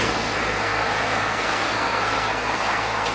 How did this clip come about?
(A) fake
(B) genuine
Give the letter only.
A